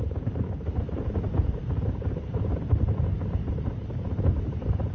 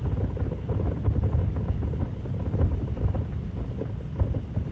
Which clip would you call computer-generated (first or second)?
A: first